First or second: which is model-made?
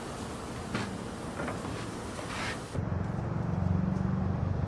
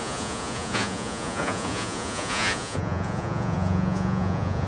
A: second